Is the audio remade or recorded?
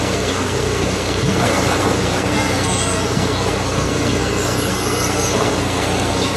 remade